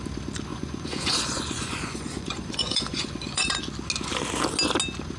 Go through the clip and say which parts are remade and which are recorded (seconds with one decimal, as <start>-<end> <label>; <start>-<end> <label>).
0.0-0.5 recorded; 0.5-3.6 remade; 3.6-5.2 recorded